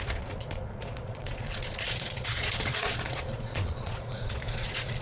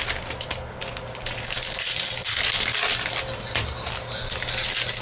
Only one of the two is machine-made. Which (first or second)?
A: first